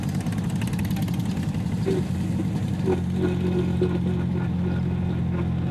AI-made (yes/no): no